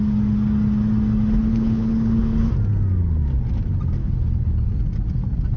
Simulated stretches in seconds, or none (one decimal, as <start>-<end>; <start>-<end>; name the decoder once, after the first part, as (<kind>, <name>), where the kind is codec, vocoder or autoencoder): 1.4-2.5 (codec, HILCodec); 4.0-4.7